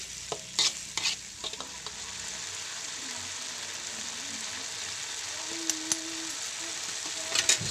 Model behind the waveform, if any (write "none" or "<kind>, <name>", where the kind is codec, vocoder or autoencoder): none